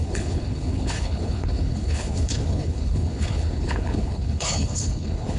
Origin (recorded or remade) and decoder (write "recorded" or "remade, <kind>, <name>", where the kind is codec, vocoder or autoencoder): remade, codec, HILCodec